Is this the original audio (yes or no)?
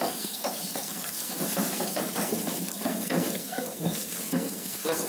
no